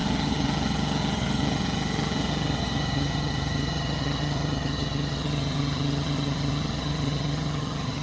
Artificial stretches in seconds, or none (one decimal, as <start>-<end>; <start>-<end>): 0.0-8.0